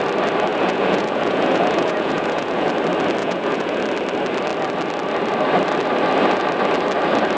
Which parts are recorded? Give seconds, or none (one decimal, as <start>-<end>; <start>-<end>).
0.0-0.5; 2.7-3.2; 3.8-7.4